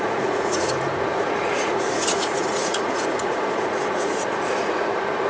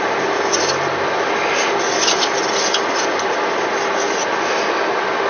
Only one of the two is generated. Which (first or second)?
first